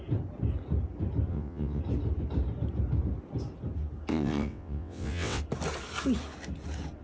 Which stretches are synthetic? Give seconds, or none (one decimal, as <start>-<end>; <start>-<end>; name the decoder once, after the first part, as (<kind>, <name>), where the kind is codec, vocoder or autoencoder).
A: 1.3-1.8 (vocoder, WaveNeXt); 4.1-5.4